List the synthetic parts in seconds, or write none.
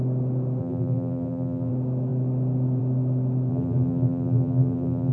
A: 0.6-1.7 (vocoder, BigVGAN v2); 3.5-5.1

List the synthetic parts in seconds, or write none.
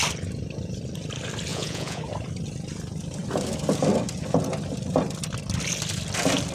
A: 1.5-2.0 (vocoder, Vocos)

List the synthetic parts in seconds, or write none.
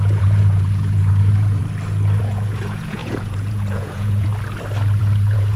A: 0.0-1.6 (vocoder, Vocos); 2.2-4.3; 5.0-5.6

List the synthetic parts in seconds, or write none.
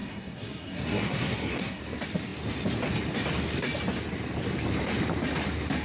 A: 0.0-1.8 (codec, SNAC)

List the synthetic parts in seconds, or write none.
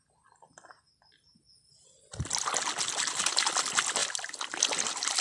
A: none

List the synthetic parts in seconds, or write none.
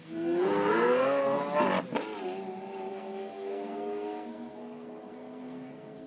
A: 0.0-1.4 (codec, SNAC); 2.9-6.1